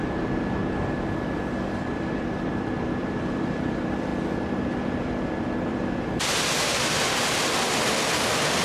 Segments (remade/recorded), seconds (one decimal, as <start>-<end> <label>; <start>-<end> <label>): 0.0-0.6 remade; 0.6-1.7 recorded; 1.7-4.1 remade; 4.1-4.8 recorded; 4.8-8.6 remade